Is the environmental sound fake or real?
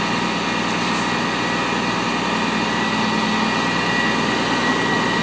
real